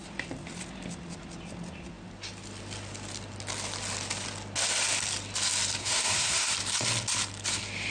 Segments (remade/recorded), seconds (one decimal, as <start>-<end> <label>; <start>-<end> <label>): 0.0-5.8 recorded; 5.8-6.5 remade; 6.5-7.9 recorded